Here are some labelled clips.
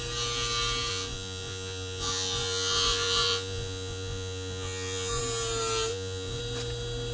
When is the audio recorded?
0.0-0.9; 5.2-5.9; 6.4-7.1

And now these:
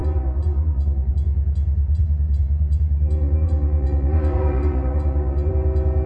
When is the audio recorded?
1.1-1.8; 5.5-6.1

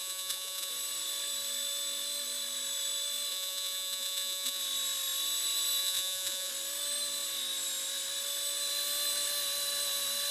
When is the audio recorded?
0.7-3.3; 4.6-5.8; 6.5-10.3

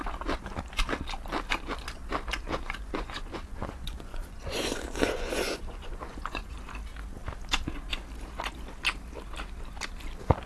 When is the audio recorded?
0.0-2.4; 6.6-10.5

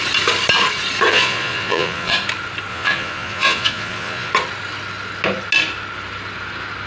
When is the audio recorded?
0.0-1.1; 2.1-2.7; 4.3-6.9